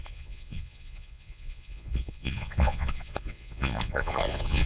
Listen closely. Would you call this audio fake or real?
fake